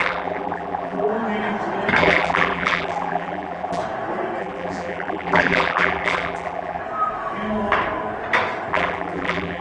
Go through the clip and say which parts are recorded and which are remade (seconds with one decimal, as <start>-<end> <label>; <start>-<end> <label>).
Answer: 0.0-1.1 remade; 1.1-2.0 recorded; 2.0-3.8 remade; 3.8-4.4 recorded; 4.4-6.8 remade; 6.8-8.7 recorded; 8.7-9.6 remade